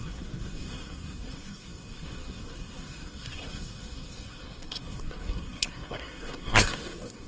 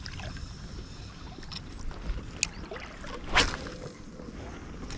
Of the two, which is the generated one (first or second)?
first